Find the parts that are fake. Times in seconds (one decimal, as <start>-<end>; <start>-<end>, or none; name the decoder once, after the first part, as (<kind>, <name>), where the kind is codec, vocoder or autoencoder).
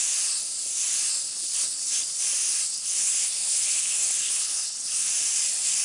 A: 1.3-2.2 (codec, HILCodec); 2.7-5.1